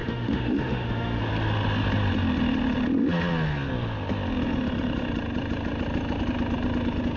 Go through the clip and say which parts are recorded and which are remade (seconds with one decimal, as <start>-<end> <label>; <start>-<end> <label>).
0.0-1.2 remade; 1.2-7.2 recorded